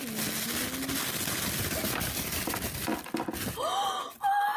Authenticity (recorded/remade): recorded